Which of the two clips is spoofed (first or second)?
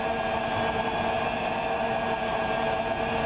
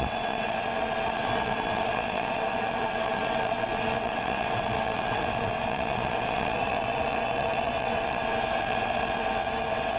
second